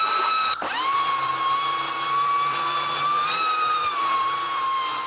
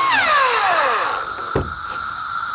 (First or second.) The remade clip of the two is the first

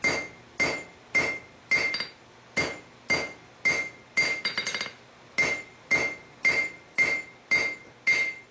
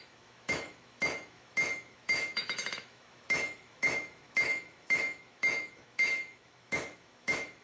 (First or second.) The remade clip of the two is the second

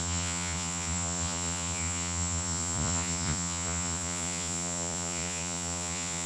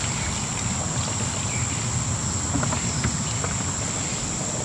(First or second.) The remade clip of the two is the first